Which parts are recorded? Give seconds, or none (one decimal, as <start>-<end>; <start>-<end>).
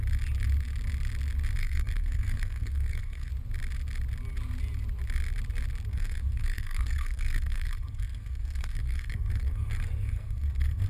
0.0-1.6; 3.3-5.9